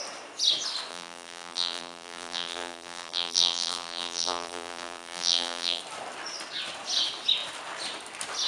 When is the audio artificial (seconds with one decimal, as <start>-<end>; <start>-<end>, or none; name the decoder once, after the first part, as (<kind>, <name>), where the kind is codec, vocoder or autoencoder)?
0.9-5.8 (vocoder, BigVGAN v2)